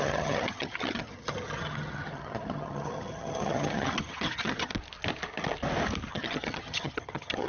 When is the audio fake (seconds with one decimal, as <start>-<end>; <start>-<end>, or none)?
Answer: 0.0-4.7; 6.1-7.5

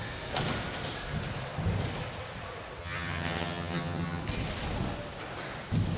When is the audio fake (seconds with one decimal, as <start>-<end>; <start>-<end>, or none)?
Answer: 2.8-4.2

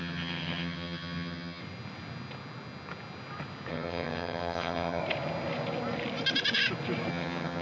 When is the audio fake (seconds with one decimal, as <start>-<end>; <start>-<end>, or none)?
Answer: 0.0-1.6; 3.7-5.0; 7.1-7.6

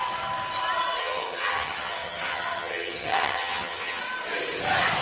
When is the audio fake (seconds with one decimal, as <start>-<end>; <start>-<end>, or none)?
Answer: 1.0-4.0